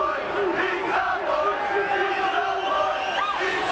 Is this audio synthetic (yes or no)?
no